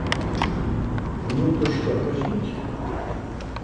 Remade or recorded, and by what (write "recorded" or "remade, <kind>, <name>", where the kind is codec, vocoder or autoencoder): recorded